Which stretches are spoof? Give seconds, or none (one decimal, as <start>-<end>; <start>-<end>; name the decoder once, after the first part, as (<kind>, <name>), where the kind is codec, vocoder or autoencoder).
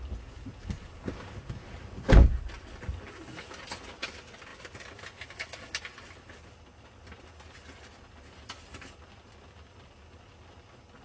none